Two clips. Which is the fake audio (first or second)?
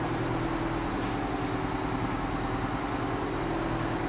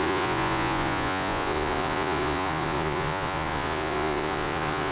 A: second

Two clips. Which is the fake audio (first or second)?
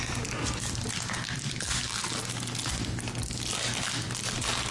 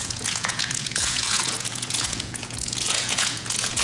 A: second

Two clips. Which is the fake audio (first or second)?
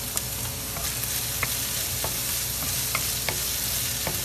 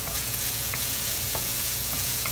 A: second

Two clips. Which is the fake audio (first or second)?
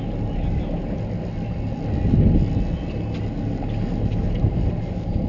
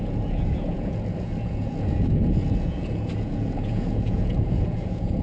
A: second